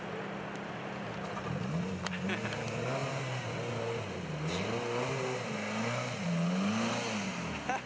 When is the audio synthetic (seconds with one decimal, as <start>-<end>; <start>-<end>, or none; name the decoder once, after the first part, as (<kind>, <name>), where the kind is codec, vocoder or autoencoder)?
none